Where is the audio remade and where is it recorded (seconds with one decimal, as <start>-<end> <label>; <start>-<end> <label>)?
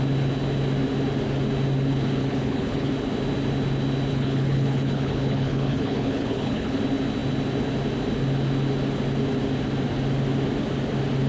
0.0-2.2 recorded; 2.2-2.9 remade; 2.9-4.1 recorded; 4.1-6.8 remade; 6.8-11.3 recorded